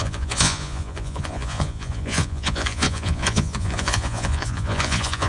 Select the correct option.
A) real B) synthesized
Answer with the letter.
B